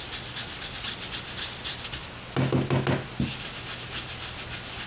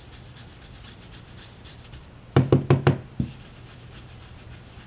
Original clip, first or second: first